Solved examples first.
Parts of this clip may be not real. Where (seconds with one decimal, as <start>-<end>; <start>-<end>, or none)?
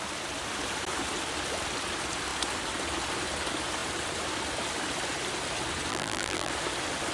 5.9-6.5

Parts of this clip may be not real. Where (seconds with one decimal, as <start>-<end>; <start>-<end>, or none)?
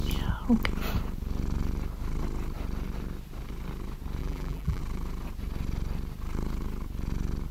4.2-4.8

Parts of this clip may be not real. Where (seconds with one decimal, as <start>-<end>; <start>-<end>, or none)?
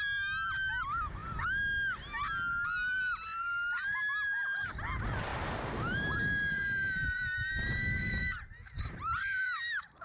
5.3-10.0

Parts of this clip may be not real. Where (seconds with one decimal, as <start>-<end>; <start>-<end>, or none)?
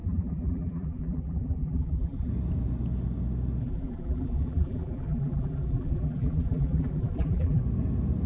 0.0-2.3; 3.6-7.6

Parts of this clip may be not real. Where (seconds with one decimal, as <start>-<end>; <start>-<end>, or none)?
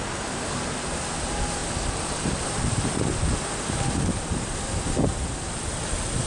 none